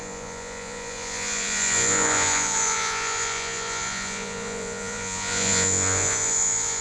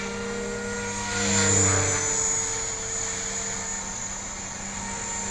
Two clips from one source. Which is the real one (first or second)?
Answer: second